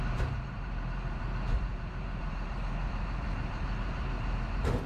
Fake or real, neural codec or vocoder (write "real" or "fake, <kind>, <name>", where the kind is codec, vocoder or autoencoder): fake, vocoder, BigVGAN v2